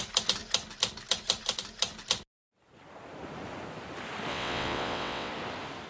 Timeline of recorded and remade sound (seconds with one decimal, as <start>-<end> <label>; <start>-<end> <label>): 0.0-4.3 recorded; 4.3-5.3 remade; 5.3-5.9 recorded